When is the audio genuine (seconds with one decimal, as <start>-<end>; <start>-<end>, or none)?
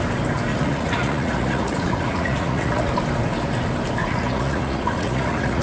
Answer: 0.0-0.5; 2.9-4.0